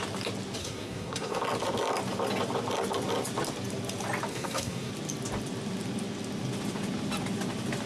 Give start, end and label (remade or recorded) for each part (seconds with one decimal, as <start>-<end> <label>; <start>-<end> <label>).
0.0-0.6 recorded; 0.6-1.4 remade; 1.4-4.3 recorded; 4.3-4.9 remade; 4.9-7.9 recorded